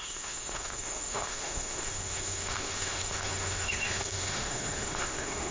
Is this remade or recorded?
remade